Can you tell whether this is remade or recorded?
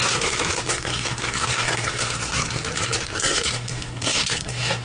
remade